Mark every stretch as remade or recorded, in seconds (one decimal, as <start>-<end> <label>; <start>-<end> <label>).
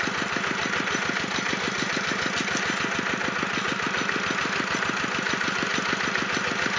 0.0-6.8 recorded